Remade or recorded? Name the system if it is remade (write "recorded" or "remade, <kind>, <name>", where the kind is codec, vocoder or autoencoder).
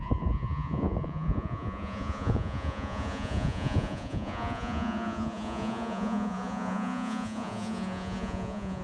remade, vocoder, Vocos